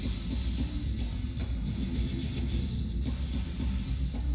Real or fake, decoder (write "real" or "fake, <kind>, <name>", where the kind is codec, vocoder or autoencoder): real